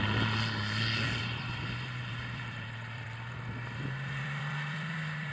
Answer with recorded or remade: remade